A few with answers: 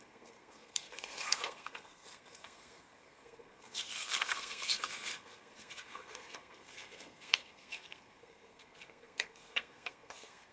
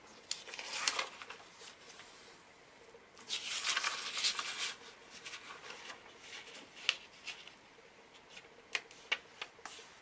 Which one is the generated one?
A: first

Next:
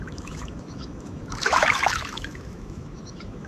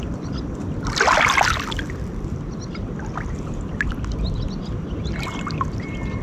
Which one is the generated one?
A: first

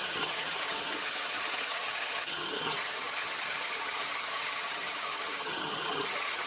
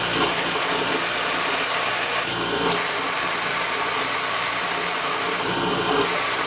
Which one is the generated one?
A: first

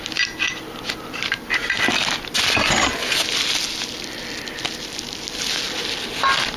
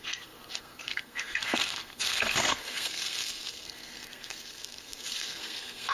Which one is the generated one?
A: second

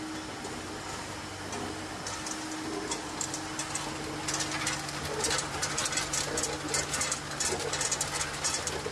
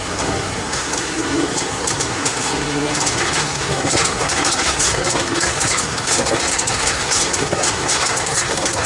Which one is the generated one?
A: second